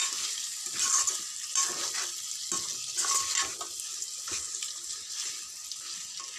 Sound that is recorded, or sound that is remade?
recorded